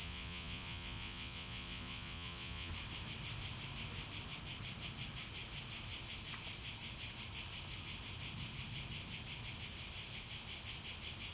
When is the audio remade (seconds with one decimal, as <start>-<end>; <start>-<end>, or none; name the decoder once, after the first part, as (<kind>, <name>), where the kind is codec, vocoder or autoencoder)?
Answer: 0.0-2.7 (vocoder, Vocos)